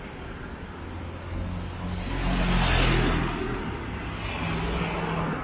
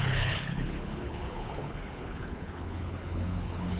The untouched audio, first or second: first